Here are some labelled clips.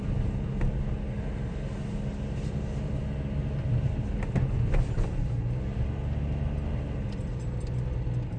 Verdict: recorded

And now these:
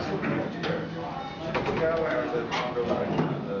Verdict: recorded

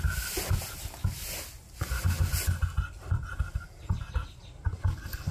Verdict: recorded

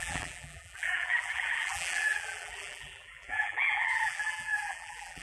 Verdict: remade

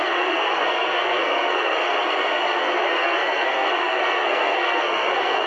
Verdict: remade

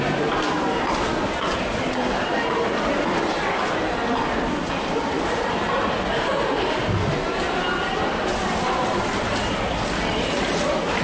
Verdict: recorded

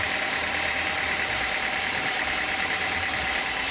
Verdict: remade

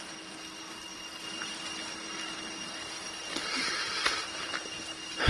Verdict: recorded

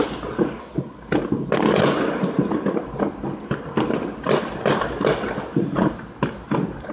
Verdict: recorded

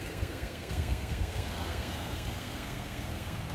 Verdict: remade